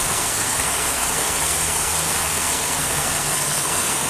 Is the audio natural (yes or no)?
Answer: no